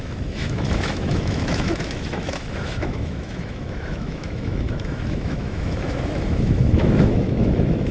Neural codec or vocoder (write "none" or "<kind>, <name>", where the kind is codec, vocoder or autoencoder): autoencoder, DAC-VAE